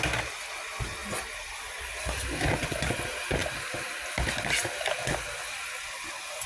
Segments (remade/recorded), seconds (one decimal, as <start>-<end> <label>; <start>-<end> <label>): 0.0-6.5 recorded